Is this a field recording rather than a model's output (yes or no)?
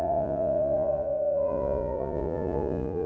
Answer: no